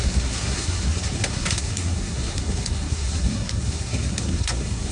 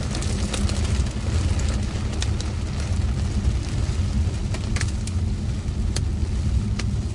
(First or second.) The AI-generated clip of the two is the first